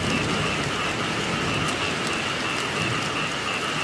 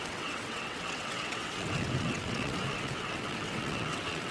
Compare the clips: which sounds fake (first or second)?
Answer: second